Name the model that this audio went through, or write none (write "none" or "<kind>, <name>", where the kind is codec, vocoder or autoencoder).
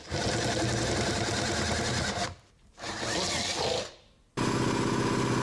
none